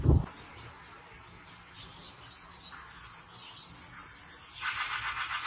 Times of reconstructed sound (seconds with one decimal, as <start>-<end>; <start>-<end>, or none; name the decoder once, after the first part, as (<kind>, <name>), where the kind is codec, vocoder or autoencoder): none